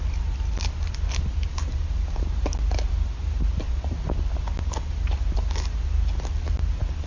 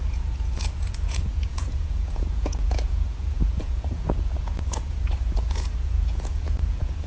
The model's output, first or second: second